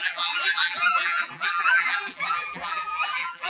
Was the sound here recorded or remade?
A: remade